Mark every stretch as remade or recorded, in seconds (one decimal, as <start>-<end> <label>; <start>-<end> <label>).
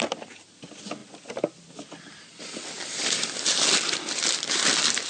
0.0-5.1 recorded